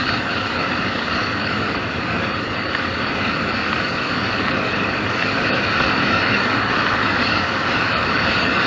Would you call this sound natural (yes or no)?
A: no